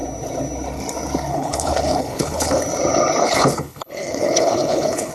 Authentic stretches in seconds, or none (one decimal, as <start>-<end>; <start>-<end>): 0.0-1.3; 2.6-3.2